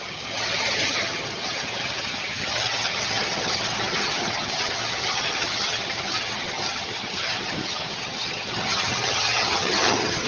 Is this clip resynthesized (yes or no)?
yes